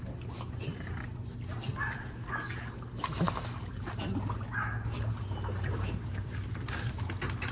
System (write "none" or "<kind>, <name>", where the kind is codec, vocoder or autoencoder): none